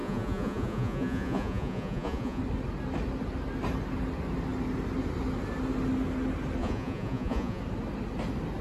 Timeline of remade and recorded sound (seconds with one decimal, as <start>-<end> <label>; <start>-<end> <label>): 0.0-2.4 remade; 2.4-6.6 recorded; 6.6-7.6 remade; 7.6-8.6 recorded